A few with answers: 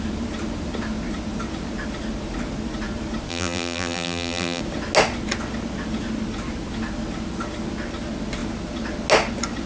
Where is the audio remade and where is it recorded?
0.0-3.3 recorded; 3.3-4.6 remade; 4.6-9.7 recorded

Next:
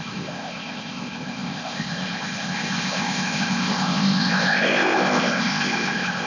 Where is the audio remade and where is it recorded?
0.0-6.3 remade

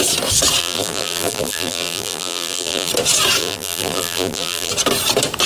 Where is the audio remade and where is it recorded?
0.0-0.6 recorded; 0.6-2.9 remade; 2.9-3.4 recorded; 3.4-4.7 remade; 4.7-5.5 recorded

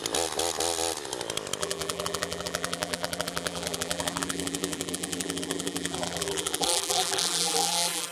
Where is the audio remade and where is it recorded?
0.0-1.6 recorded; 1.6-8.1 remade

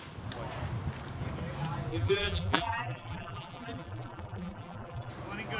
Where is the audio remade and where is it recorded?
0.0-1.9 recorded; 1.9-5.1 remade; 5.1-5.6 recorded

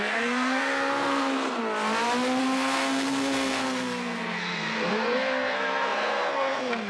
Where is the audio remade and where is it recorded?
0.0-1.6 remade; 1.6-2.4 recorded; 2.4-6.9 remade

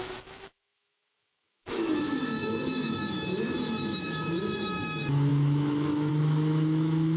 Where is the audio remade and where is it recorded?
0.0-7.2 remade